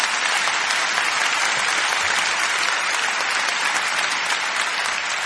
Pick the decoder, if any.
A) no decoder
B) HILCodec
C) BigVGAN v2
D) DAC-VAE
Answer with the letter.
A